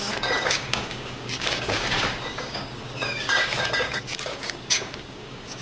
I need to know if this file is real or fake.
fake